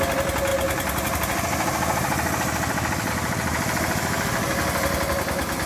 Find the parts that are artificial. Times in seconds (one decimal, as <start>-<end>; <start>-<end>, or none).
none